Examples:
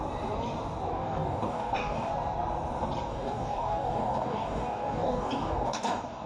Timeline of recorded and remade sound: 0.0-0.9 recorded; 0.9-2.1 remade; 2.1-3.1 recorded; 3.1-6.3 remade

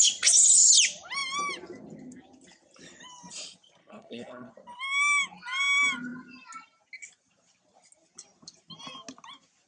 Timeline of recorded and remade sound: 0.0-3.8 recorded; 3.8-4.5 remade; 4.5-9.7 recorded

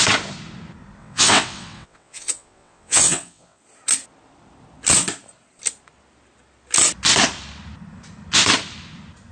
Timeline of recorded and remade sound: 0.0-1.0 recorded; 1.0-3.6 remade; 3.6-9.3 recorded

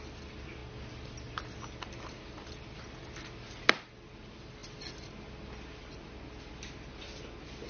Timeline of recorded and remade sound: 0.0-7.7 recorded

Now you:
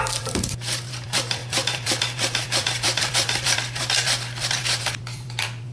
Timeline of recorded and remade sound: 0.0-5.7 remade

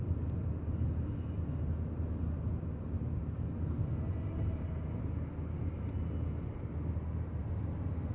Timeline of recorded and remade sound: 0.0-8.1 recorded

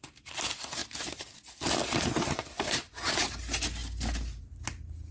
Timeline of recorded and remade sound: 0.0-5.1 recorded